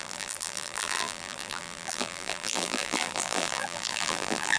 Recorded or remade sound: remade